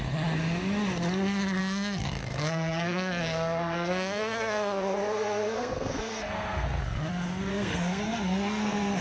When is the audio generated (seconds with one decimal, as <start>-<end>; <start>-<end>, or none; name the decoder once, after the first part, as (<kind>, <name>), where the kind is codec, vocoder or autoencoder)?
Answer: 1.6-6.8 (codec, SNAC); 7.5-9.0